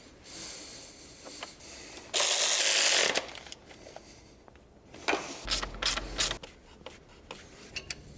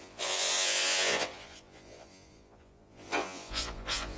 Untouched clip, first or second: first